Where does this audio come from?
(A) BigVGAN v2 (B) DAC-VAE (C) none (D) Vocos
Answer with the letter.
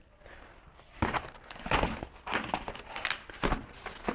C